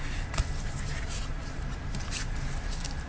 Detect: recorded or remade remade